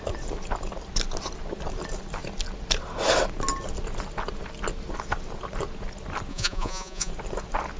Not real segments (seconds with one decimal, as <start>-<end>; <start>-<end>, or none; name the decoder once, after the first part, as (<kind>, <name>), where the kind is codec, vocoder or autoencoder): 6.3-7.1 (vocoder, Vocos)